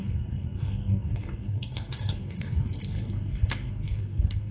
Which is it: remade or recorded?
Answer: remade